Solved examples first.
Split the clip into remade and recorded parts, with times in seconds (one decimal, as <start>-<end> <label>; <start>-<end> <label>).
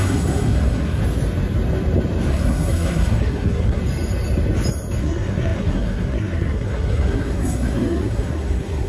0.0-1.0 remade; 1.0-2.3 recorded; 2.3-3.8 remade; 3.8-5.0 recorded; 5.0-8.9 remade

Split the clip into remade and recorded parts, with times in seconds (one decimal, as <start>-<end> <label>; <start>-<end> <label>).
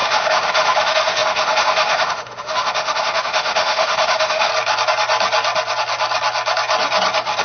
0.0-4.5 remade; 4.5-7.4 recorded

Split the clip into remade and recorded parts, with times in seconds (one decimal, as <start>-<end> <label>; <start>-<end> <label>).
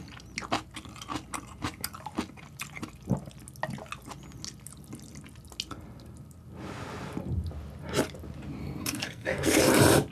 0.0-8.6 recorded; 8.6-9.6 remade; 9.6-10.1 recorded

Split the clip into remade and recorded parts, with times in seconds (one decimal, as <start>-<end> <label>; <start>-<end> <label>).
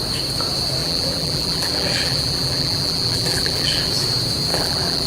0.0-0.8 recorded; 0.8-3.9 remade; 3.9-4.5 recorded; 4.5-5.1 remade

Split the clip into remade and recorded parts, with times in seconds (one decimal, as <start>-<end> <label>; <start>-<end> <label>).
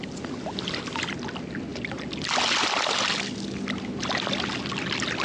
0.0-5.2 recorded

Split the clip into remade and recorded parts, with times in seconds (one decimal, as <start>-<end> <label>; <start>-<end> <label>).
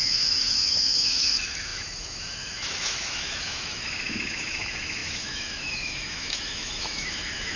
0.0-7.6 remade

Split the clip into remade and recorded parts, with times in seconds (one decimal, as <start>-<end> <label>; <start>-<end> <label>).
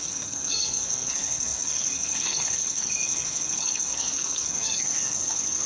0.0-5.7 remade